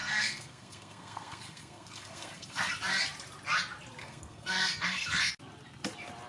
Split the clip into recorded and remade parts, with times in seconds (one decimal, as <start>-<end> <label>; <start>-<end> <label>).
0.0-2.7 remade; 2.7-4.0 recorded; 4.0-5.3 remade; 5.3-6.3 recorded